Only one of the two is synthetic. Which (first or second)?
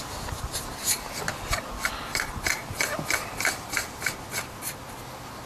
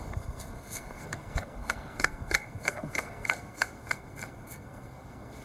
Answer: second